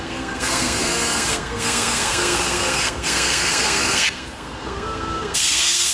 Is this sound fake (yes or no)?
yes